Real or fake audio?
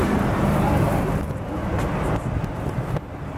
real